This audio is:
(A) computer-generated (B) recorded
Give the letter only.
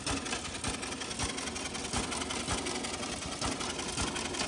B